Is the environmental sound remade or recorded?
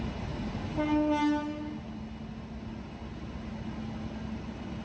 recorded